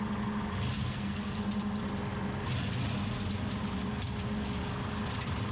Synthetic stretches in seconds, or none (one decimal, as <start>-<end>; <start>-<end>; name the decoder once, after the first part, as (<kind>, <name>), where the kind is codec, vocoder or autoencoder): 0.8-1.4 (codec, SNAC)